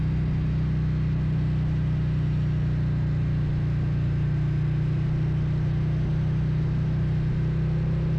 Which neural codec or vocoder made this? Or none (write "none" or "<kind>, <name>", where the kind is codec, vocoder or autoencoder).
none